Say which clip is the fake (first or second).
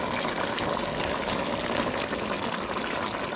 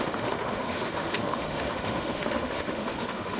second